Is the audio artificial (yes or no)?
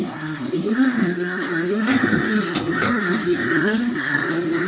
yes